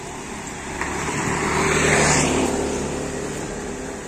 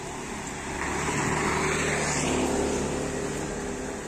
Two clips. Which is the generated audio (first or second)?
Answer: first